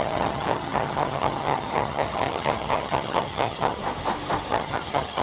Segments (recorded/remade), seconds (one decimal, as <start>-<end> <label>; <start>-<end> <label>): 0.0-3.8 remade; 3.8-4.5 recorded; 4.5-5.2 remade